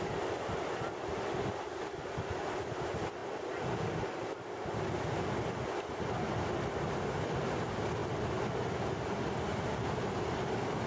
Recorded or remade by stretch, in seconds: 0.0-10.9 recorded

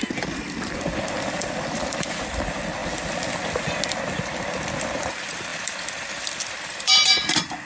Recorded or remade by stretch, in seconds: 0.0-2.8 remade; 2.8-3.9 recorded; 3.9-7.7 remade

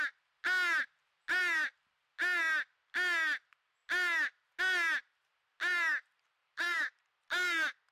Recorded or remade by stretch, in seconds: 0.0-6.4 recorded; 6.4-7.1 remade; 7.1-7.9 recorded